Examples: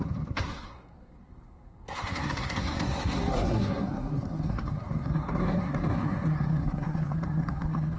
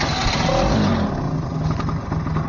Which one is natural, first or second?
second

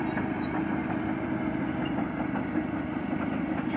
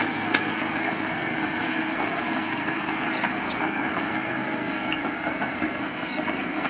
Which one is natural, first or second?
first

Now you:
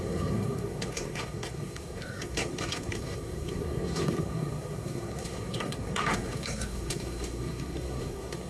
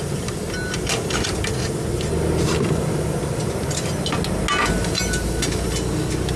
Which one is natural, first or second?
second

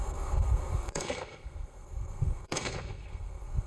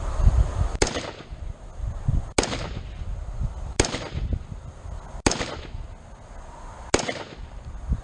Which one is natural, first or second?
second